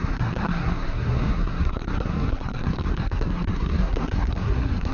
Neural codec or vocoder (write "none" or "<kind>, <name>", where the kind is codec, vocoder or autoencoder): codec, SNAC